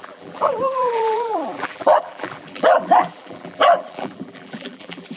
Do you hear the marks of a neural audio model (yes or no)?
yes